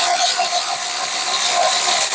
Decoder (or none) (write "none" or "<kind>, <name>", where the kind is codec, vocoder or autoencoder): none